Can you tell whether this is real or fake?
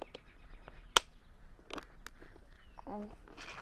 real